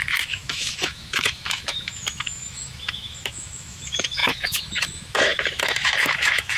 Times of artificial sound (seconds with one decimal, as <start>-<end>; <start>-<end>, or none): 0.0-6.6